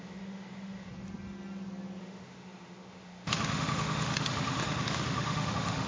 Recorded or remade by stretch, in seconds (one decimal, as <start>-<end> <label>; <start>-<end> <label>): 0.0-0.9 remade; 0.9-2.0 recorded; 2.0-5.9 remade